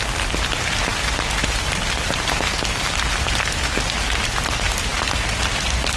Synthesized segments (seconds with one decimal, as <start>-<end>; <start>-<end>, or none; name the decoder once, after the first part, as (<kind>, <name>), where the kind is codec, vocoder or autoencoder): none